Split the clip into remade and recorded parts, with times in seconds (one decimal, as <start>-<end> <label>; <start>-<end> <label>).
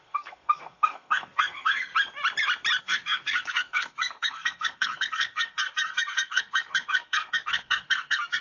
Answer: 0.0-1.9 remade; 1.9-2.8 recorded; 2.8-8.4 remade